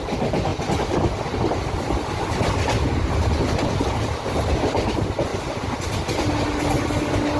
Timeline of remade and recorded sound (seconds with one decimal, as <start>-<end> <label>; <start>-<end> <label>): 0.0-7.4 recorded